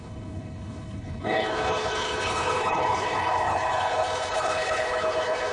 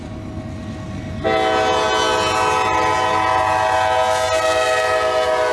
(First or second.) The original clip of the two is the second